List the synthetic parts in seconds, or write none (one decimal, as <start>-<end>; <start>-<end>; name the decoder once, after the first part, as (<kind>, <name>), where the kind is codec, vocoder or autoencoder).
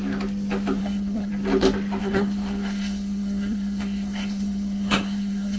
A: 0.8-1.3 (codec, SNAC); 2.0-5.6